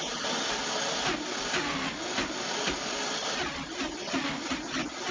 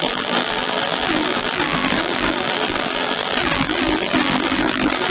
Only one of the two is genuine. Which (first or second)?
first